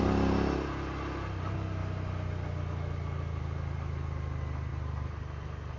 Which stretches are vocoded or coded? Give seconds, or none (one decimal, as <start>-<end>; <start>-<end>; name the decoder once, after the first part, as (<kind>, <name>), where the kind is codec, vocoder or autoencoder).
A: none